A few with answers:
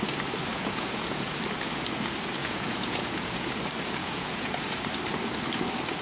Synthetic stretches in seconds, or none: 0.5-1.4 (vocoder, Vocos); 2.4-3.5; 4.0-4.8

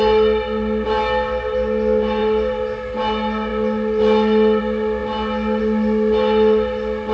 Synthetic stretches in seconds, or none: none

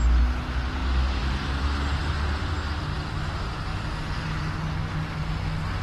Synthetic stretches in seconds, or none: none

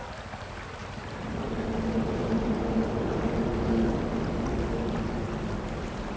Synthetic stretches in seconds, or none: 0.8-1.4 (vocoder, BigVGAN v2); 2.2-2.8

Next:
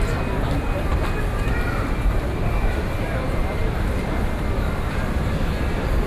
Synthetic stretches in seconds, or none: none

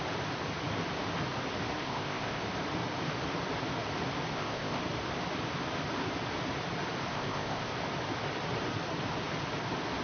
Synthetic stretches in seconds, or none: 1.8-2.4 (codec, ZipCodec); 4.3-4.8; 7.1-7.7

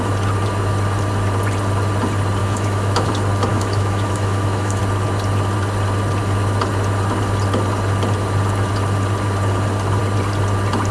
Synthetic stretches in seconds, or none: 2.4-3.1 (autoencoder, DAC-VAE); 3.5-4.8

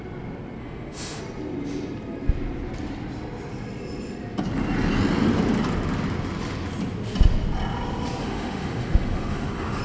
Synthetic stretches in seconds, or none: 0.6-1.2 (autoencoder, DAC-VAE); 8.2-9.8